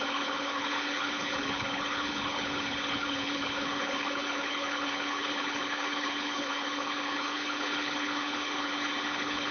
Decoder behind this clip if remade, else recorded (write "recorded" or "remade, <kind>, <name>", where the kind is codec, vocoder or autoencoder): remade, codec, HILCodec